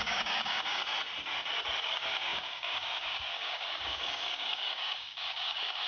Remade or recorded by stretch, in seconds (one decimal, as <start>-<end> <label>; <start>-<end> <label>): 0.0-0.8 remade; 0.8-1.8 recorded; 1.8-5.9 remade